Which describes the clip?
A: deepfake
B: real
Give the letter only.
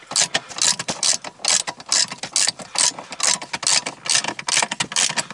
B